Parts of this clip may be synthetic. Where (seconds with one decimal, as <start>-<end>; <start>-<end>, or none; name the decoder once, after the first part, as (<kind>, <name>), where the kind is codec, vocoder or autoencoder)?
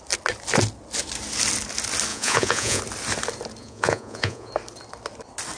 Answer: 2.1-2.8 (vocoder, Vocos); 3.6-4.5